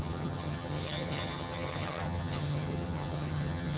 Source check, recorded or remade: remade